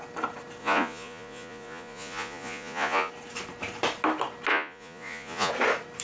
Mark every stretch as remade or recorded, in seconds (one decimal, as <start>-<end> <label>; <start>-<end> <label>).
0.0-0.6 recorded; 0.6-3.1 remade; 3.1-4.5 recorded; 4.5-5.5 remade; 5.5-6.0 recorded